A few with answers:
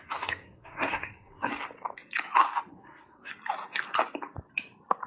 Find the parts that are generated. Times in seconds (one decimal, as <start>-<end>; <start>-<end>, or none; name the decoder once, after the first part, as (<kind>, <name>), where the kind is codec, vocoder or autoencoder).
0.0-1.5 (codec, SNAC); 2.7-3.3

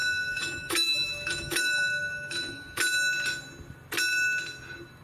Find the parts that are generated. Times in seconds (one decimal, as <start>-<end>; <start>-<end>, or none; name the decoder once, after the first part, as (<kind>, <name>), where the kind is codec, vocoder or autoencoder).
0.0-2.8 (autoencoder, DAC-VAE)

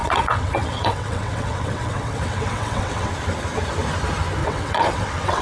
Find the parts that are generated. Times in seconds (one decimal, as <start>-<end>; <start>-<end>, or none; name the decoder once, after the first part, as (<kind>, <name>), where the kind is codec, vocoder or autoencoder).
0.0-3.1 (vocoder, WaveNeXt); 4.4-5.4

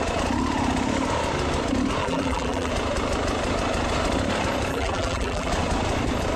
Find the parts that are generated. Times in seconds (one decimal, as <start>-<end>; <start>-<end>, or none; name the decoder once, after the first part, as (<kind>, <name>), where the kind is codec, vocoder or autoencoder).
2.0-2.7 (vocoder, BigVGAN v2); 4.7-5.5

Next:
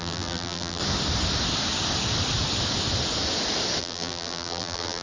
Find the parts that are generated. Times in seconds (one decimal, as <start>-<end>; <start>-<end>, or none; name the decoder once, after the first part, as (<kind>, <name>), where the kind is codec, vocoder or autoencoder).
0.0-0.8 (vocoder, BigVGAN v2); 3.8-5.0